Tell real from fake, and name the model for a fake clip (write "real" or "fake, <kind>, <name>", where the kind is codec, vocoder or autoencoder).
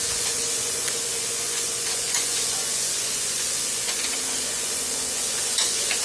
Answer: fake, vocoder, Vocos